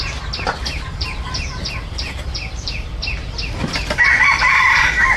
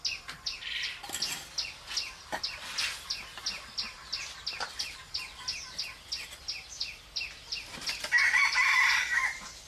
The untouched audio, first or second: second